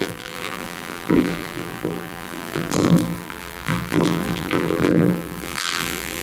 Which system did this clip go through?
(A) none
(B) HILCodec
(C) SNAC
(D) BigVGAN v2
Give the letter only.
D